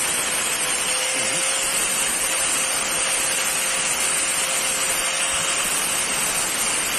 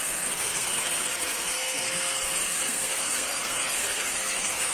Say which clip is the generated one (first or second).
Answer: second